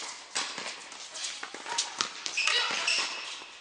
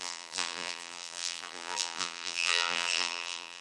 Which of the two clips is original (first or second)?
first